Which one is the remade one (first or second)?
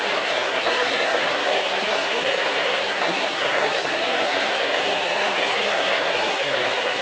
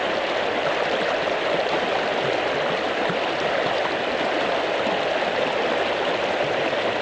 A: first